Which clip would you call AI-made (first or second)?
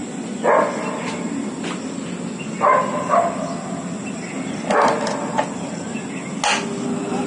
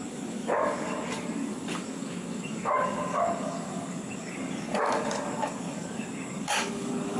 second